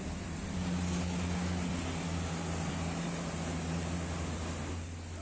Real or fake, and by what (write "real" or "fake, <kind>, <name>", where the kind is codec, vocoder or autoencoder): real